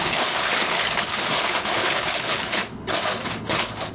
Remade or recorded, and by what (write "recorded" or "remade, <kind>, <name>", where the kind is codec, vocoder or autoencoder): remade, codec, HILCodec